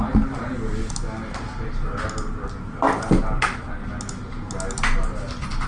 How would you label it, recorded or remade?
recorded